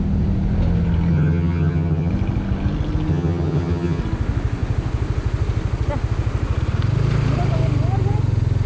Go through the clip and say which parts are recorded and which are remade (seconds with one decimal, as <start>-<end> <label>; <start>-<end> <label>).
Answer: 0.0-1.1 recorded; 1.1-2.1 remade; 2.1-3.1 recorded; 3.1-4.0 remade; 4.0-8.7 recorded